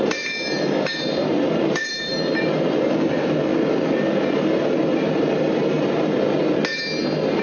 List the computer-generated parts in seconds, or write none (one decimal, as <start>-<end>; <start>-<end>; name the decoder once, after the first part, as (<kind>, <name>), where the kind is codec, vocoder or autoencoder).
0.0-3.5 (vocoder, BigVGAN v2); 4.3-6.6